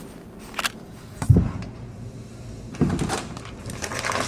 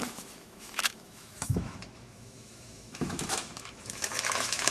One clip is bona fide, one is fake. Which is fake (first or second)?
second